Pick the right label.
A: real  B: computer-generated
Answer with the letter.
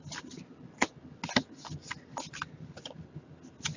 A